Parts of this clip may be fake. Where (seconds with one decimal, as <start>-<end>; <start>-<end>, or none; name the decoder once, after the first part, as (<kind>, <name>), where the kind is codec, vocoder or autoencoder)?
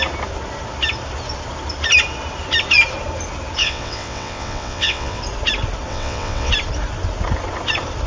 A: 3.6-5.2 (vocoder, WaveNeXt); 5.9-6.5